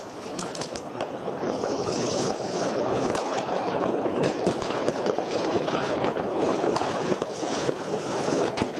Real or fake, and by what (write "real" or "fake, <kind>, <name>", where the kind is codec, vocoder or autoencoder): fake, codec, HILCodec